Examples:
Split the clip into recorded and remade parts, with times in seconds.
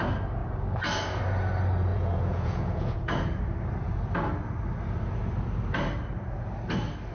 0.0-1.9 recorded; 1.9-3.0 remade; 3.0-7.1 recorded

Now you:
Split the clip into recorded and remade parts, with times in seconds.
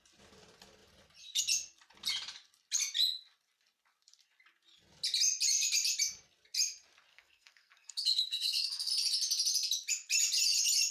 0.0-7.1 recorded; 7.1-8.9 remade; 8.9-10.9 recorded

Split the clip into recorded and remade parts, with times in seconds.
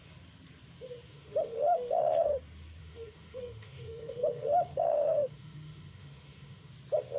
0.0-1.1 recorded; 1.1-2.3 remade; 2.3-2.8 recorded; 2.8-6.7 remade; 6.7-7.2 recorded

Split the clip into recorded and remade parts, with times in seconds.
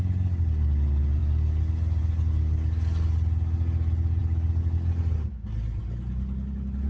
0.0-6.9 recorded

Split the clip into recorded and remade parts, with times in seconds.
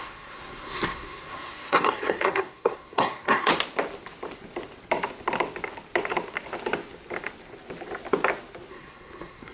0.0-3.5 remade; 3.5-8.7 recorded; 8.7-9.5 remade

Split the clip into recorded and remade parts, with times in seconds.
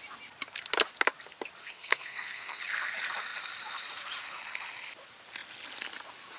0.0-1.6 recorded; 1.6-2.6 remade; 2.6-6.4 recorded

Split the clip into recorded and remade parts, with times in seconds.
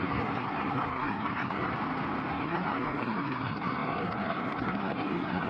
0.0-1.7 remade; 1.7-2.3 recorded; 2.3-5.5 remade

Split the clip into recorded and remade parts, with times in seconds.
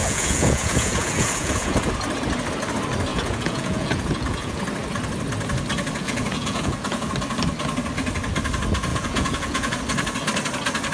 0.0-1.9 remade; 1.9-3.1 recorded; 3.1-4.6 remade; 4.6-6.0 recorded; 6.0-7.1 remade; 7.1-8.9 recorded; 8.9-9.8 remade; 9.8-10.9 recorded